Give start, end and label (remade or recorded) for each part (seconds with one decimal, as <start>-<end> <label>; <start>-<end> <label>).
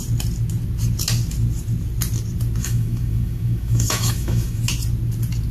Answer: 0.0-2.6 recorded; 2.6-4.6 remade; 4.6-5.5 recorded